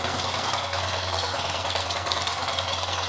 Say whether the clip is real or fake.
fake